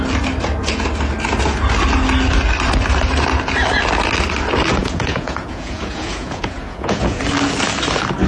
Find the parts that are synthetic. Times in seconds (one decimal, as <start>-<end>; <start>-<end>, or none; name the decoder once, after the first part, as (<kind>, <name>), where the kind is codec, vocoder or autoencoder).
4.8-7.2 (vocoder, Vocos)